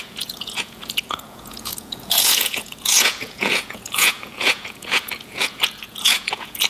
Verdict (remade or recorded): remade